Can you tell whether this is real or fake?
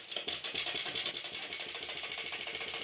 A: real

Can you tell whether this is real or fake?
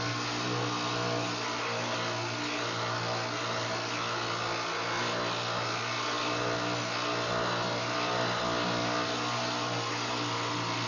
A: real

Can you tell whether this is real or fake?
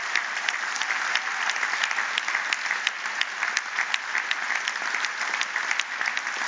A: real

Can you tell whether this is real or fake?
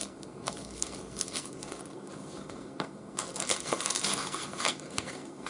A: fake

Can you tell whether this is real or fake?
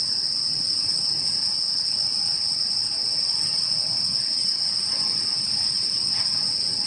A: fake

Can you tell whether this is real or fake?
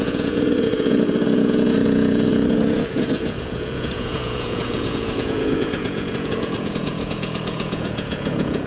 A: fake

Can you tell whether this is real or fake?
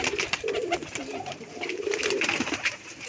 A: fake